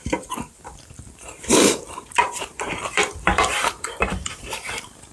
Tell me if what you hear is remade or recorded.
remade